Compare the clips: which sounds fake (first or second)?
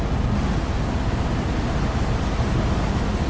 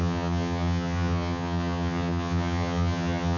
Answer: second